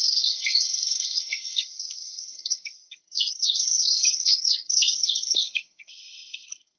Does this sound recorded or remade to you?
remade